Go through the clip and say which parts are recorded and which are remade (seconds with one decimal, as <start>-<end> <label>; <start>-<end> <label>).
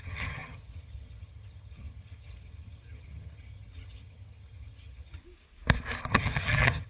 0.0-5.2 remade; 5.2-6.1 recorded; 6.1-6.9 remade